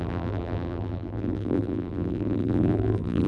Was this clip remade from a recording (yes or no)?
yes